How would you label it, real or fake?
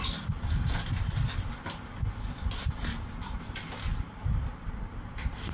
real